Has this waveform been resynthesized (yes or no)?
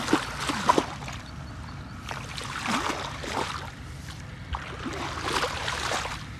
no